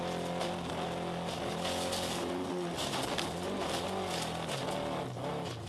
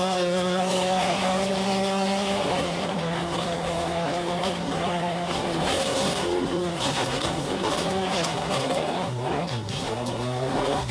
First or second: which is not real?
second